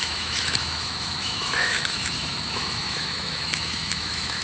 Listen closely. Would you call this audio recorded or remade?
remade